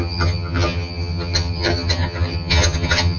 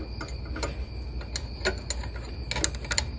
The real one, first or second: second